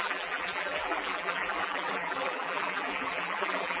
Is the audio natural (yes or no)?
no